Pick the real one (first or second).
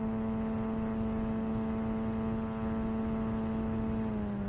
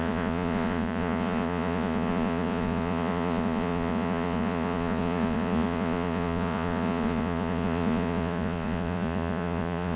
first